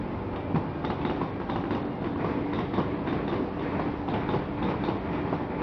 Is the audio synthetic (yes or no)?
no